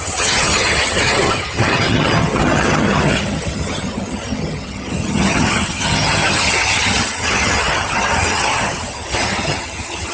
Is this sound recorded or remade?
remade